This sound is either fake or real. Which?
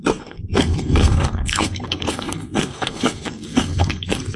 fake